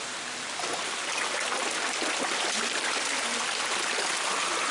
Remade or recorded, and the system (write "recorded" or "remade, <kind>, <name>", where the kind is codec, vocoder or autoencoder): recorded